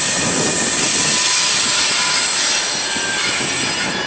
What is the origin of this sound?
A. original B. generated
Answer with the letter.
A